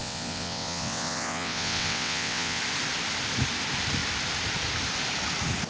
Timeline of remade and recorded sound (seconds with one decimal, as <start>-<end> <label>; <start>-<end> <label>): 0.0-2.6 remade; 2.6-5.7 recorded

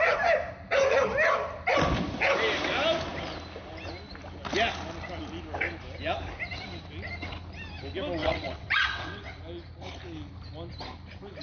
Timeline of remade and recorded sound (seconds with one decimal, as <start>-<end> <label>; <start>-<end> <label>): 0.0-8.2 recorded; 8.2-9.3 remade; 9.3-11.4 recorded

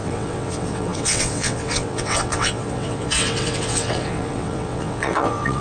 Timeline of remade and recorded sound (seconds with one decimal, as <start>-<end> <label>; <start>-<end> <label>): 0.0-5.6 remade

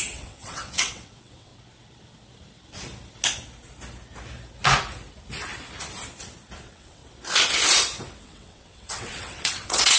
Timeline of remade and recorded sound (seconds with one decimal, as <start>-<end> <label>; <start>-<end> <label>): 0.0-1.5 remade; 1.5-6.6 recorded; 6.6-7.0 remade; 7.0-8.2 recorded; 8.2-10.0 remade